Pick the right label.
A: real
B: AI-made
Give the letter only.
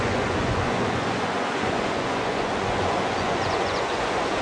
B